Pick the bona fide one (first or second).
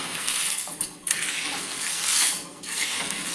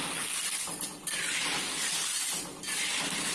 second